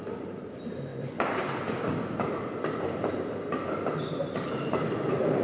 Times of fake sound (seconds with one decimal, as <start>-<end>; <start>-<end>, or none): 0.0-0.9; 4.1-5.4

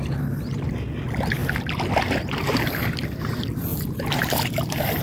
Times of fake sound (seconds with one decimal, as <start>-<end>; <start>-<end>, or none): 3.7-5.0

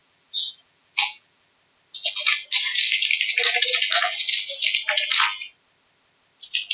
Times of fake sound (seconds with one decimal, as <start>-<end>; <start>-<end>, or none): 0.0-1.5

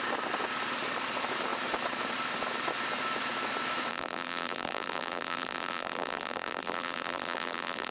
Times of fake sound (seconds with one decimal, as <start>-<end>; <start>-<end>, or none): 3.9-7.9

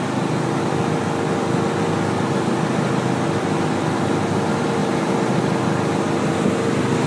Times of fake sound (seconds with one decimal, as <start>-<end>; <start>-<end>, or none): 4.8-5.4